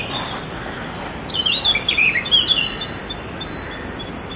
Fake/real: real